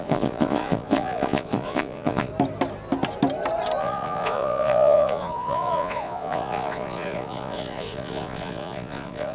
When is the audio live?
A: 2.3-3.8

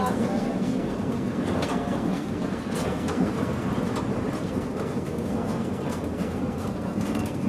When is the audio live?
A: 3.7-4.4

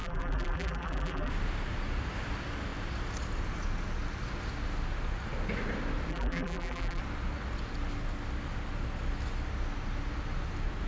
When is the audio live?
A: 1.3-6.1; 7.0-10.9

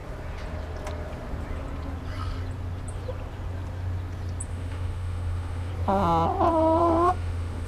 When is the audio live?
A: 0.0-4.5; 5.7-6.5

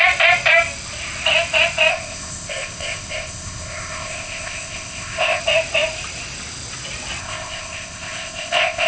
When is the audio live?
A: 0.0-1.9; 5.4-7.2